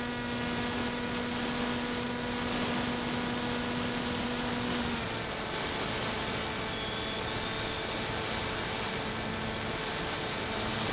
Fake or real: real